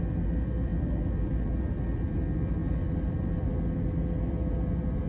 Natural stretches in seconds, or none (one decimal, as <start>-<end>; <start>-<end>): 0.0-5.1

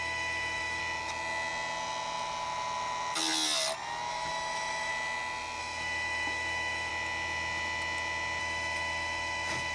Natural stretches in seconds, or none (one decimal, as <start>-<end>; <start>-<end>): 0.8-4.1; 4.9-5.6; 6.9-8.4

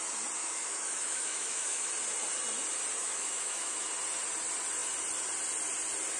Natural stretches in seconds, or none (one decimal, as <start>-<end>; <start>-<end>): 0.0-0.4; 1.9-3.0; 3.9-6.2

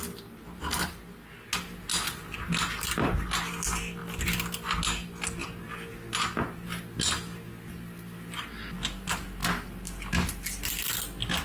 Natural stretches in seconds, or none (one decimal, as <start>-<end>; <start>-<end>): 0.0-11.4

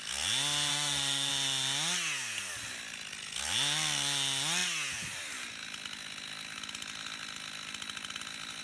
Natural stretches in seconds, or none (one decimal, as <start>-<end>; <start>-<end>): 0.0-0.7; 1.3-8.6

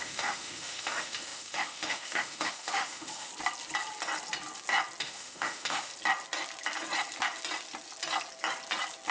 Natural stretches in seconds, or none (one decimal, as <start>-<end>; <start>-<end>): 3.3-5.0; 5.9-9.1

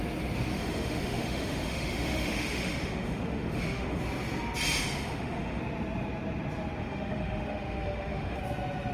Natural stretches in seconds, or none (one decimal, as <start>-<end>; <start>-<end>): 0.0-0.5; 4.0-4.8; 5.6-6.8; 8.4-8.9

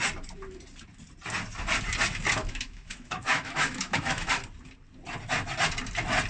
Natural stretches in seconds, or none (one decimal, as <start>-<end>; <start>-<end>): 0.0-2.4; 4.3-6.3